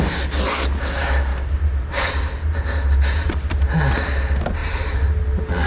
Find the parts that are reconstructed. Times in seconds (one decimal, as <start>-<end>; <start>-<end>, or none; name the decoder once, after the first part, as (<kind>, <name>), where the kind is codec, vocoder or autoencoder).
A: 1.3-2.1 (vocoder, BigVGAN v2); 4.6-5.2